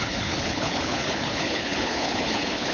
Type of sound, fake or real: fake